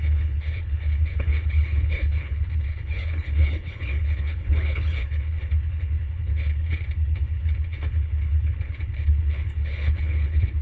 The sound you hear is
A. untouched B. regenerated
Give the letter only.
B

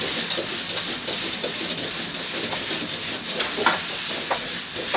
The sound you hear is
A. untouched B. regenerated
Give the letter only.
A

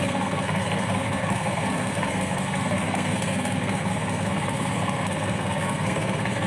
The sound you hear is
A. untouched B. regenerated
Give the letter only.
B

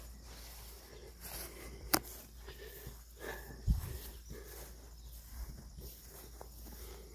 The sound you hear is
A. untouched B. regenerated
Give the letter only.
A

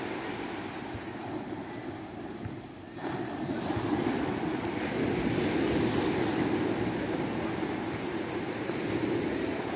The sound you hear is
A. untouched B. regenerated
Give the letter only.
A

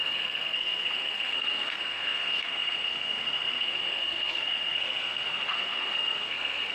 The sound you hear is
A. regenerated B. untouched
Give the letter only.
A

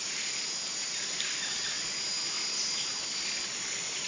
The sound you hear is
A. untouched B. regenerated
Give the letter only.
A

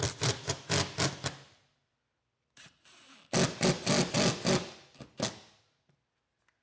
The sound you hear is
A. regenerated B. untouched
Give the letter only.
B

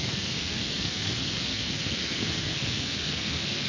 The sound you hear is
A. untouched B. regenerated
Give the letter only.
B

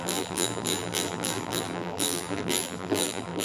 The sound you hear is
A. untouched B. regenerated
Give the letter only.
B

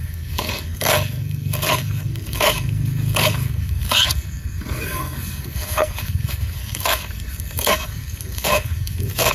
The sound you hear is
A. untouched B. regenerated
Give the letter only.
B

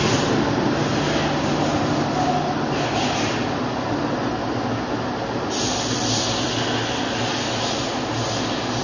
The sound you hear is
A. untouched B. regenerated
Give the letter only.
A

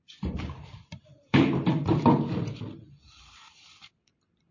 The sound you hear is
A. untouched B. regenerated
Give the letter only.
B